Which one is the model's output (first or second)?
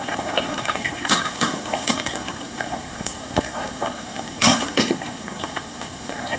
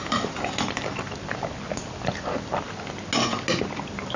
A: first